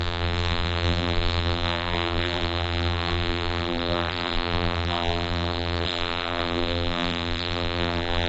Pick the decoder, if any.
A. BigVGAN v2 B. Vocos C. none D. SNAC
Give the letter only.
A